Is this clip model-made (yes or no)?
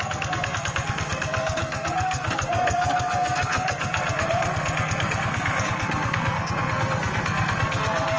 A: yes